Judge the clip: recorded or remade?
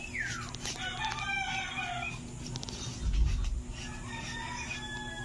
recorded